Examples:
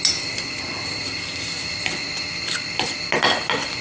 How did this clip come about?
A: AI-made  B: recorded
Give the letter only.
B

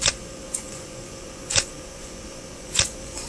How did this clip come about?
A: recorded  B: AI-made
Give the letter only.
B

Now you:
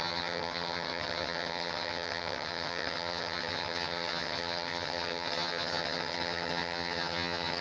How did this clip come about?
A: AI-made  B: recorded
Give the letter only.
A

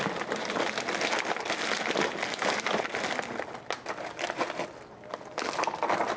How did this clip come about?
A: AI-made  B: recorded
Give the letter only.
B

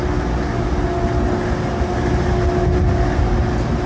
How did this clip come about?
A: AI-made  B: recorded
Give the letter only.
B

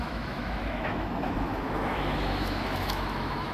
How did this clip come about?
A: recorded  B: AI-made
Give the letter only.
B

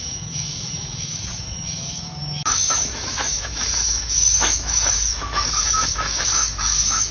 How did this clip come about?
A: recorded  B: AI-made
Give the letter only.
B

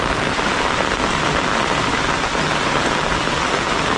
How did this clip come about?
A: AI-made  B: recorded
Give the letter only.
B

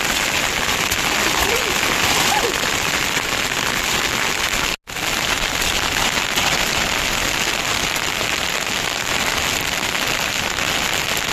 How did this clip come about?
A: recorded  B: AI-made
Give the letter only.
A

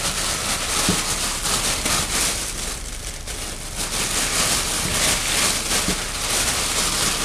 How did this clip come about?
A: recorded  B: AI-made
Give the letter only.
A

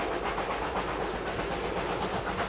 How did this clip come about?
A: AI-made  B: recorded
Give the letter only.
B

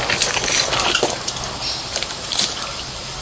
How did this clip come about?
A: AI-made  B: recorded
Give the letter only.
B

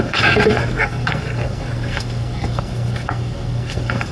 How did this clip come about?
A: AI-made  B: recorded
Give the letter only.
A